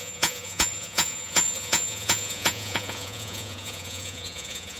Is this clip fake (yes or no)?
yes